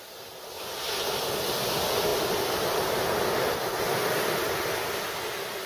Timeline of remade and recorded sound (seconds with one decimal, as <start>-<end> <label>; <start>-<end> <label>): 0.0-5.7 recorded